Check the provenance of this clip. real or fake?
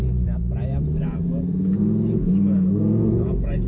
fake